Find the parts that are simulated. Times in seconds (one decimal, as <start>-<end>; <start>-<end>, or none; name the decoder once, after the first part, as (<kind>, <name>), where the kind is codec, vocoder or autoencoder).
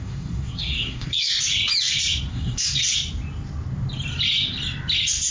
0.0-1.3 (codec, SNAC); 2.3-2.8